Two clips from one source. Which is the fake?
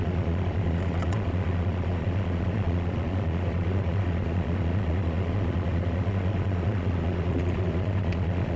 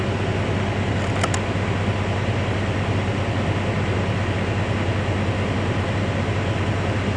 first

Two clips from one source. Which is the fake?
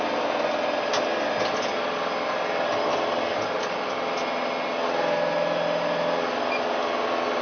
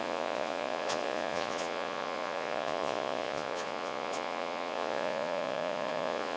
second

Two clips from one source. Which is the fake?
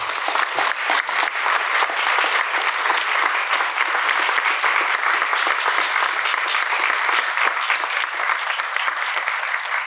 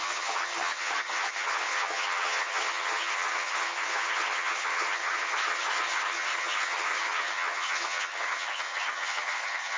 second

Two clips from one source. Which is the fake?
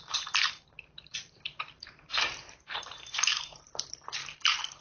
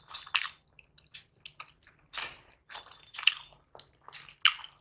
first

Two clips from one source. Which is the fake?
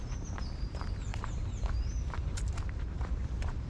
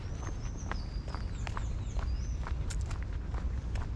first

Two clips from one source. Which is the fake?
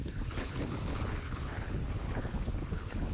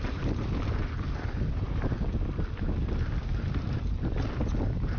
first